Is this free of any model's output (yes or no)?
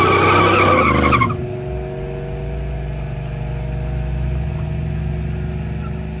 yes